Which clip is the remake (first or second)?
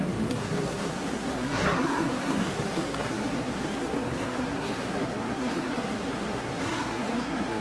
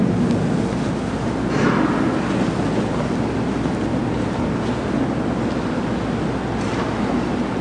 first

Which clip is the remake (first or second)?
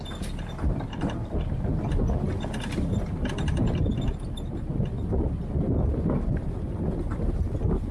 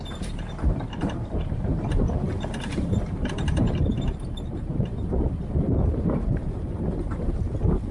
second